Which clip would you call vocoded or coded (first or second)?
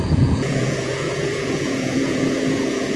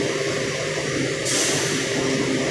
first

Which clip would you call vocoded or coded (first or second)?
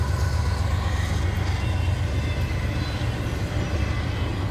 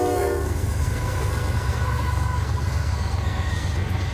second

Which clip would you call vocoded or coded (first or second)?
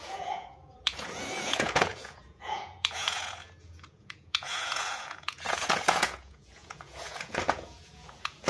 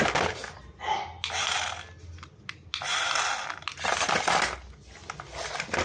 first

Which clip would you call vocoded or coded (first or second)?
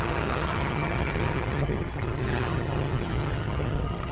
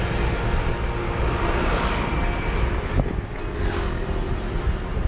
first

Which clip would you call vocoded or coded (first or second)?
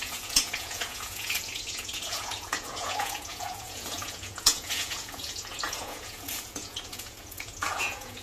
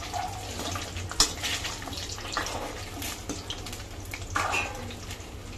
first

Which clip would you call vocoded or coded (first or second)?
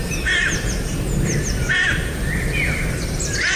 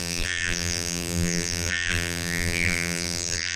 second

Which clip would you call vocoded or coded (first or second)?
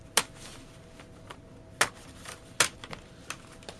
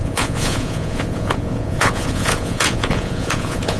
second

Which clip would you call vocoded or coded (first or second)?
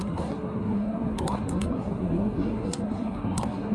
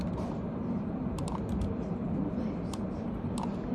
first